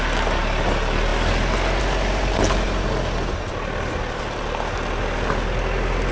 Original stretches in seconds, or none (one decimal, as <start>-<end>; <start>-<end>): 0.0-6.1

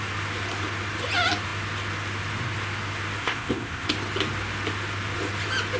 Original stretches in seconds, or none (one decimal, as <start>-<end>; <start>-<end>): 0.0-3.2; 3.9-5.8